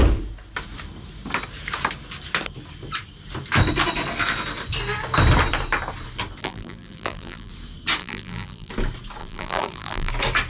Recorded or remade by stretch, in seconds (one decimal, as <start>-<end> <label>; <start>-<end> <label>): 0.0-6.4 recorded; 6.4-7.5 remade; 7.5-8.0 recorded; 8.0-8.7 remade; 8.7-9.2 recorded; 9.2-10.1 remade; 10.1-10.5 recorded